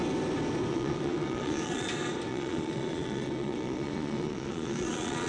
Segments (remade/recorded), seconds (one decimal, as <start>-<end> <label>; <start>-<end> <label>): 0.0-0.7 recorded; 0.7-1.9 remade; 1.9-2.3 recorded; 2.3-5.3 remade